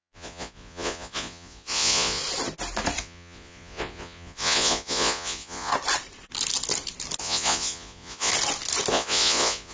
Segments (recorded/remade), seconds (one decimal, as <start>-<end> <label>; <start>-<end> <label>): 0.0-2.2 remade; 2.2-3.0 recorded; 3.0-5.7 remade; 5.7-7.2 recorded; 7.2-8.3 remade; 8.3-8.9 recorded; 8.9-9.7 remade